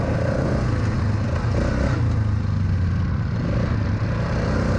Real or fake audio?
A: real